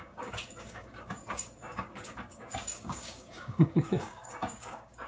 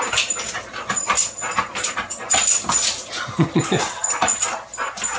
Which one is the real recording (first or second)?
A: second